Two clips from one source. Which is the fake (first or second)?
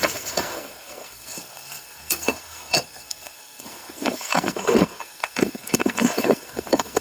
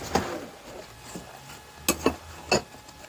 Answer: first